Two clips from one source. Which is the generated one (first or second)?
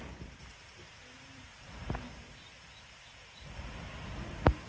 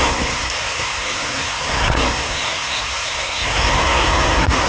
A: second